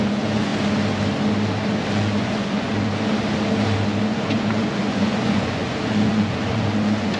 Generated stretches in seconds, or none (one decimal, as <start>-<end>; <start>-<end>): 0.0-0.5; 1.9-2.9; 4.0-7.2